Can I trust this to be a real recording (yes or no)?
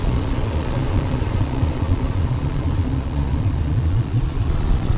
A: no